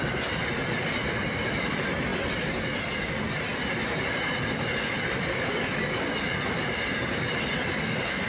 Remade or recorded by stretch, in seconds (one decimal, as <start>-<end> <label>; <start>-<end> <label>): 0.0-8.3 recorded